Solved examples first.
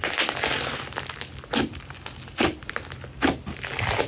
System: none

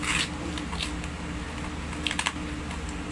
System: none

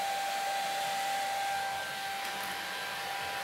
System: none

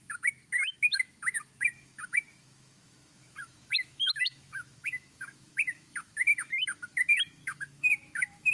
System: autoencoder, DAC-VAE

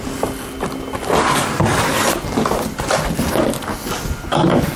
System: none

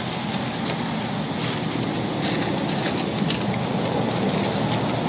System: none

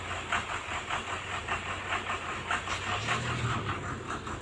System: none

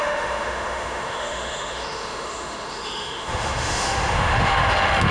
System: autoencoder, DAC-VAE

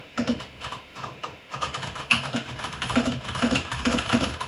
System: autoencoder, DAC-VAE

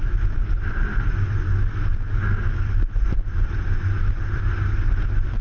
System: none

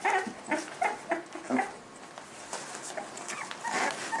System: none